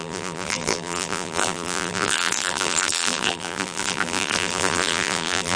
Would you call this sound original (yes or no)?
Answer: no